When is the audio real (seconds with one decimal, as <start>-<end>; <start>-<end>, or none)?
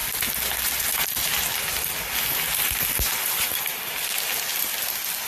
0.0-5.3